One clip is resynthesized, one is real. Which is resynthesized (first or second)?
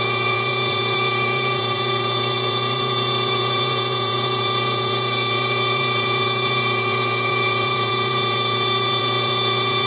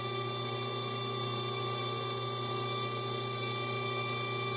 first